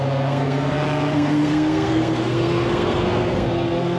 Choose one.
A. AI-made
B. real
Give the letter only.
A